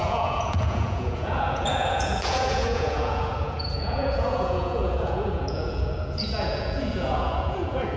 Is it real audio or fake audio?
fake